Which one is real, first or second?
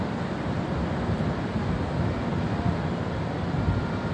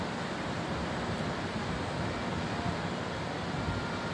second